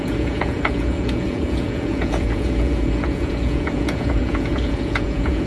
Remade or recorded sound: remade